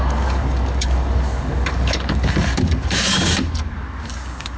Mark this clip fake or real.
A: fake